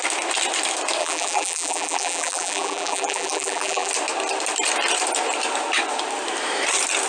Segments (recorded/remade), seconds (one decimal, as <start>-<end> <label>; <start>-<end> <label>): 0.0-1.0 recorded; 1.0-3.9 remade; 3.9-7.1 recorded